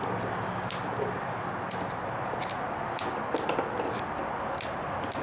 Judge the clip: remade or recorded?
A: recorded